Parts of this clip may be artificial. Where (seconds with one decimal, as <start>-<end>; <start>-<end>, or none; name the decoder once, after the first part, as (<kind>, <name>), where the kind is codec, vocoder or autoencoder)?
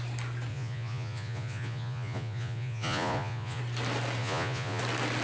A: 0.5-3.6 (vocoder, Vocos); 4.2-4.8